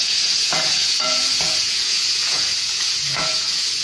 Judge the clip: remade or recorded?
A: remade